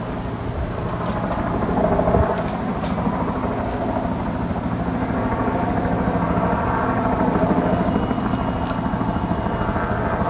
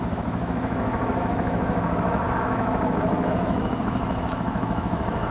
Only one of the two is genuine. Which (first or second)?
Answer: first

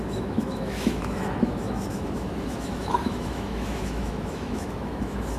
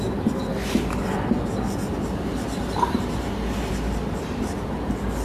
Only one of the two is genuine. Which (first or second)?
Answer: second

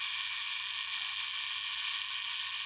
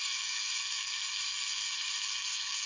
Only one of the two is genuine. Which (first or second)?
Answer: first